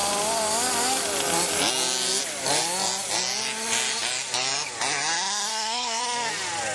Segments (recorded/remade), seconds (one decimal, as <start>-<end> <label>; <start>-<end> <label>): 0.0-5.5 recorded; 5.5-6.0 remade; 6.0-6.7 recorded